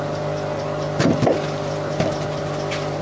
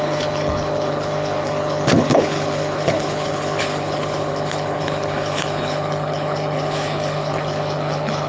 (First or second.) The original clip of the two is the first